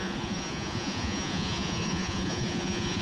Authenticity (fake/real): fake